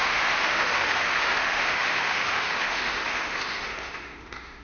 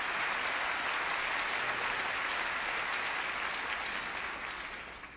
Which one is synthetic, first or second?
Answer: first